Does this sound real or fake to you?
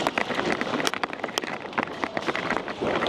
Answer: real